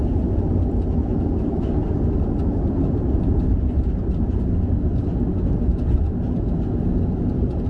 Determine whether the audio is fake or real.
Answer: real